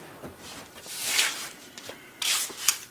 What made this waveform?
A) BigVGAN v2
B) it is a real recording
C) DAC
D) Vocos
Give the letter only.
A